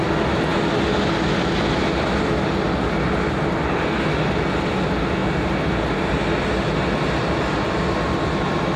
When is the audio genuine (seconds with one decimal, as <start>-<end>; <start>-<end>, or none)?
0.0-8.8